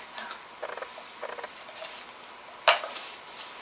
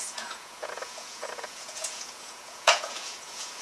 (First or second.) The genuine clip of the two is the first